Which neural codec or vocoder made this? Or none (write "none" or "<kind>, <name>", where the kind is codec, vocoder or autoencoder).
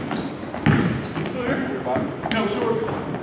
none